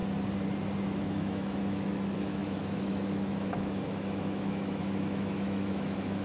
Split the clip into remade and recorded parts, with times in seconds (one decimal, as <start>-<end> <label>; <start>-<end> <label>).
0.0-1.0 recorded; 1.0-6.2 remade